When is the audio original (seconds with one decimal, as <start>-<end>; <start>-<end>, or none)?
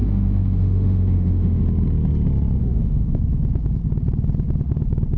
1.6-2.6; 3.2-5.2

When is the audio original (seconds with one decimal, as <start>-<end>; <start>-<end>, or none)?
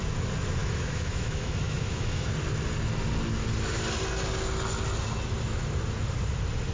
0.0-0.6; 2.3-6.7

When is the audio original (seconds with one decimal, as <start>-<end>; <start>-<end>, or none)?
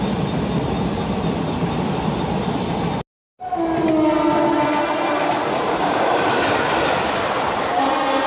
0.0-8.3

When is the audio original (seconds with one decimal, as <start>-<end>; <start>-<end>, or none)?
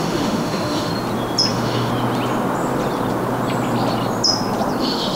0.9-1.5; 1.9-4.8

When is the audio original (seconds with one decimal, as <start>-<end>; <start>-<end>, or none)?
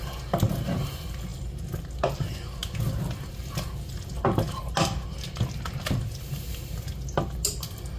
0.0-8.0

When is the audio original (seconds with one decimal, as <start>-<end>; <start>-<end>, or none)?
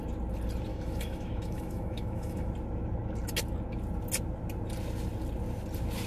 0.0-0.7; 2.5-6.1